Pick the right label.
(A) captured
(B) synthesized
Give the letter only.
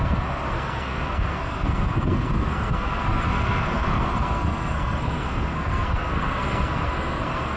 B